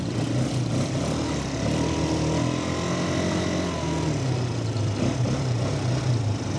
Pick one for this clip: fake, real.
real